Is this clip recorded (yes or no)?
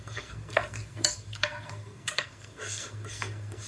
no